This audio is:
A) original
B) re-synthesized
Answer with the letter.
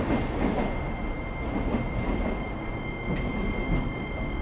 A